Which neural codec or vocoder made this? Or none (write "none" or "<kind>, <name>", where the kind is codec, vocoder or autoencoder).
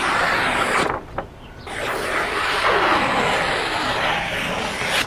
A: none